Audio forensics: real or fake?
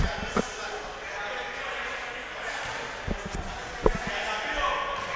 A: real